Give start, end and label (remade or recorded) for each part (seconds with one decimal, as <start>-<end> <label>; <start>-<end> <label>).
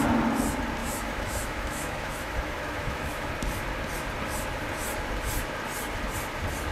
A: 0.0-0.8 recorded; 0.8-3.3 remade; 3.3-6.7 recorded